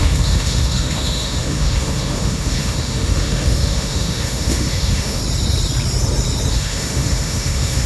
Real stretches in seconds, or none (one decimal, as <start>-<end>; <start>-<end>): 5.2-6.5

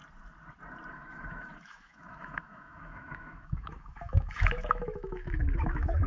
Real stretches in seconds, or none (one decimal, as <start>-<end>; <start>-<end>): 0.0-0.9

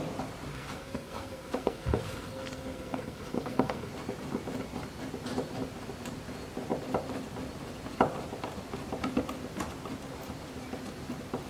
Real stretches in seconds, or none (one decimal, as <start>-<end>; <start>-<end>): 0.0-0.5; 3.9-11.5

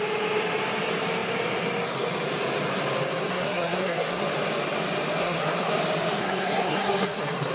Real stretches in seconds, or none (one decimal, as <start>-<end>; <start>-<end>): 0.0-3.3; 4.2-5.2; 5.7-6.2